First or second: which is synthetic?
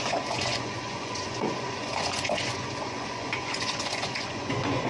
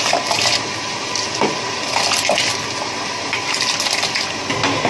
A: first